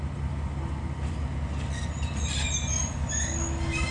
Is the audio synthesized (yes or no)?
no